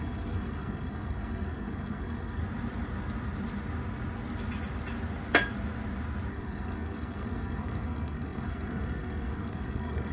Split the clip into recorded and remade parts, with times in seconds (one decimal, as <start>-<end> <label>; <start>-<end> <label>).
0.0-2.4 remade; 2.4-6.3 recorded; 6.3-10.1 remade